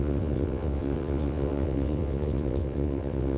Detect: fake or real fake